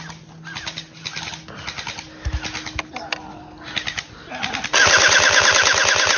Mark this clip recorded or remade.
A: recorded